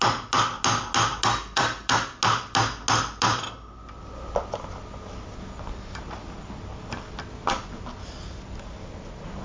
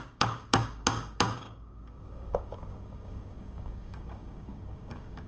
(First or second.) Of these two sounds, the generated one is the second